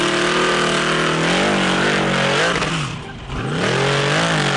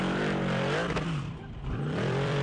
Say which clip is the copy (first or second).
second